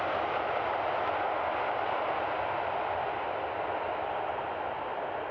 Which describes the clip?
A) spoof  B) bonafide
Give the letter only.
B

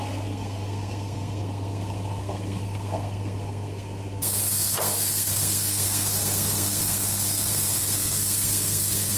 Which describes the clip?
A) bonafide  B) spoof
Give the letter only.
B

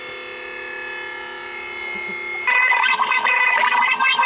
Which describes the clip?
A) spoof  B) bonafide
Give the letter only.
B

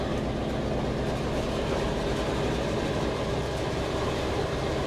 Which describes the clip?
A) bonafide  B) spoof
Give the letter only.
A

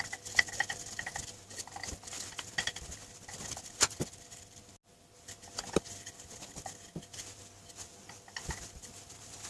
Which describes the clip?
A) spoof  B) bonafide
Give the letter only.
B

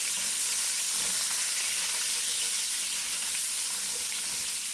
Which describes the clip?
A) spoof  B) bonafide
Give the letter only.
B